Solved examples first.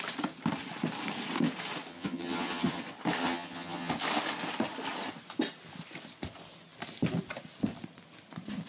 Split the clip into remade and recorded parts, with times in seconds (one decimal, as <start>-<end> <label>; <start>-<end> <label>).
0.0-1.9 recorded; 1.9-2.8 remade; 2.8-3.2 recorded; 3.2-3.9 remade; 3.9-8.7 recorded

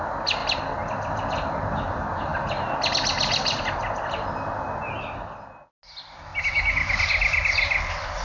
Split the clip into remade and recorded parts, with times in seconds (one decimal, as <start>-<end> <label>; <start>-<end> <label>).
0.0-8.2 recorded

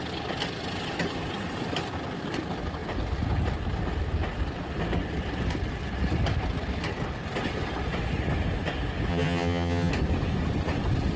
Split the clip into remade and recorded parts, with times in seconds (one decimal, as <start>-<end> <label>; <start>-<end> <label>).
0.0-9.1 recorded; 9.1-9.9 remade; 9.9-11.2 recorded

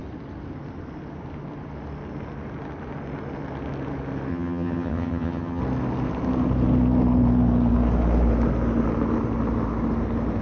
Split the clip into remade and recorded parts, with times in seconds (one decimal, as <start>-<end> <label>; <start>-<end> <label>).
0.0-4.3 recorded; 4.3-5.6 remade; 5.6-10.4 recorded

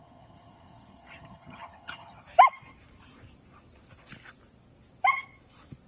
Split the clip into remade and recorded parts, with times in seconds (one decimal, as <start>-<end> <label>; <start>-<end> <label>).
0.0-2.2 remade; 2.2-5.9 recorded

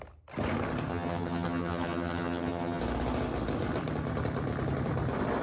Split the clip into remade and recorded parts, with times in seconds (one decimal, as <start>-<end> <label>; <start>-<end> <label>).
0.0-0.9 recorded; 0.9-2.8 remade; 2.8-5.4 recorded

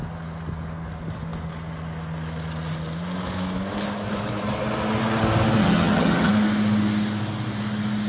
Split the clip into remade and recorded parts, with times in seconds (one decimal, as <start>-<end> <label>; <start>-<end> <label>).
0.0-5.6 recorded; 5.6-6.3 remade; 6.3-8.1 recorded